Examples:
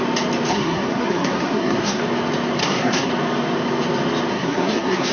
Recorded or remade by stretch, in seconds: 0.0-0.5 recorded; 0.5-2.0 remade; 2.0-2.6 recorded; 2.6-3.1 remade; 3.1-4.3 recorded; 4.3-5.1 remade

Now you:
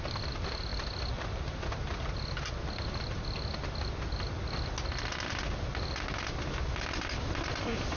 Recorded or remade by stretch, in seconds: 0.0-8.0 recorded